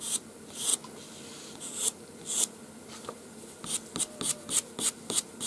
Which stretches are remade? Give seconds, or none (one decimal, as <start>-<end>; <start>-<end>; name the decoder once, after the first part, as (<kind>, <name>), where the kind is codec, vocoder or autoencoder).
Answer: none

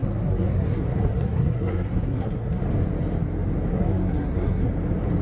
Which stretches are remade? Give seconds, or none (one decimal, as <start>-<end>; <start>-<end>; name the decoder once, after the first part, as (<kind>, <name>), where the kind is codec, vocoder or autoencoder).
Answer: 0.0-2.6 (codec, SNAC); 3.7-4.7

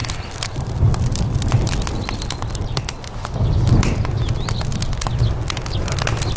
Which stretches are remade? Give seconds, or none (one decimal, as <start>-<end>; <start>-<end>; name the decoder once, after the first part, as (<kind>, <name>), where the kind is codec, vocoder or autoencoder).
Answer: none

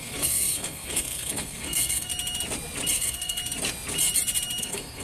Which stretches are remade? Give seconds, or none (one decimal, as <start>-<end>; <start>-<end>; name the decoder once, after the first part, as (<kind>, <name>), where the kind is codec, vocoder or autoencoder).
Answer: 0.0-2.1 (codec, SNAC); 2.9-3.4; 4.6-5.0